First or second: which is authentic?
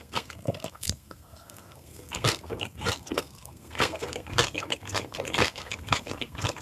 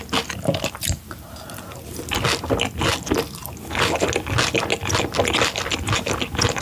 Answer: second